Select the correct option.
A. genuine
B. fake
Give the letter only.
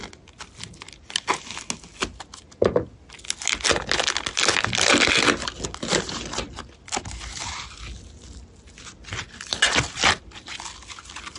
A